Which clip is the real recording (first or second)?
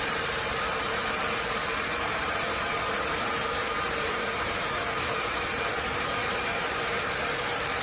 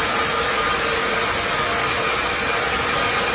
second